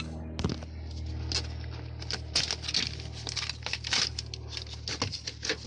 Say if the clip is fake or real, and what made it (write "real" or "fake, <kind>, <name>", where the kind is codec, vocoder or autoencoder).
real